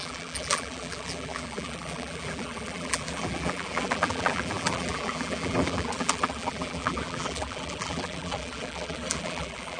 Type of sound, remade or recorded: remade